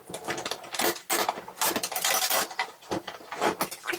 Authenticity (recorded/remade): recorded